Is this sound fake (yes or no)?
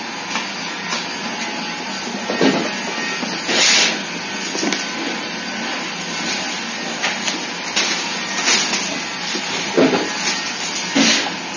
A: no